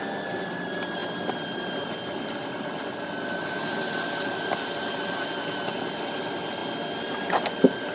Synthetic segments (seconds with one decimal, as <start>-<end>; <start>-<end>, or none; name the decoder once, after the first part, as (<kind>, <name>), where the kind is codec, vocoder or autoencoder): none

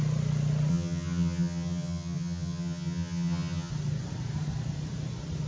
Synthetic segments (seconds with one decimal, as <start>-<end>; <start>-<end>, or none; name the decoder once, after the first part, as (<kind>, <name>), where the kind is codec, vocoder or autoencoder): 0.7-3.7 (vocoder, HiFi-GAN)